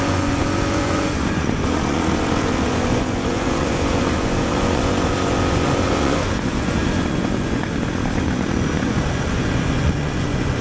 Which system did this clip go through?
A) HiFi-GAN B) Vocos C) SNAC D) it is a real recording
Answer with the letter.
B